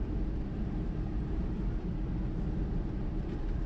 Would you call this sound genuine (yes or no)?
no